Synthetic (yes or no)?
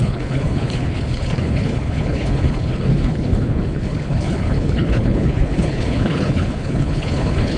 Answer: yes